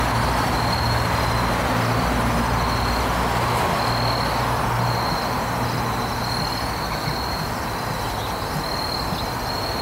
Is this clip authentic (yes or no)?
yes